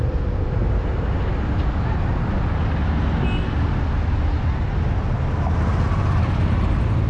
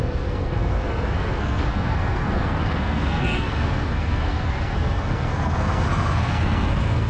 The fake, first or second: second